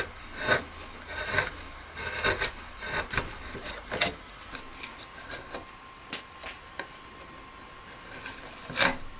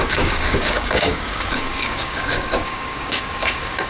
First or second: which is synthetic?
second